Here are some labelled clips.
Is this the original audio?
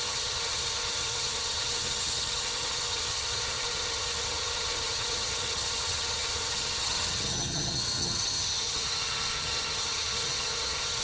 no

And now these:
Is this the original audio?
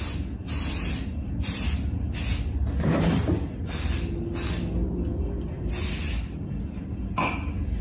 yes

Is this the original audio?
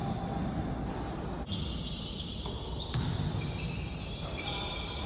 yes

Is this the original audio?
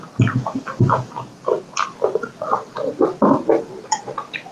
yes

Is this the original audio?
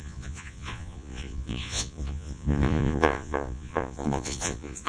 no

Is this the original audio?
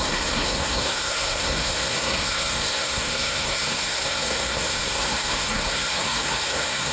no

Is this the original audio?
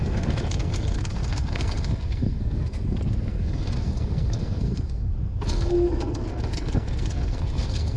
no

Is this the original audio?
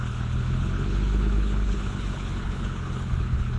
no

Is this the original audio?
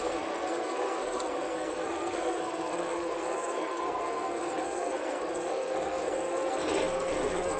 no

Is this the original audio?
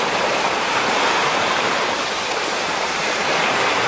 no